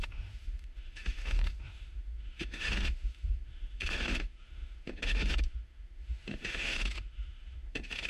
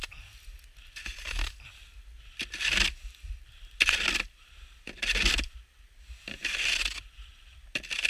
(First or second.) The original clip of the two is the second